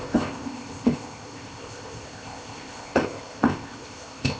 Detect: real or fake fake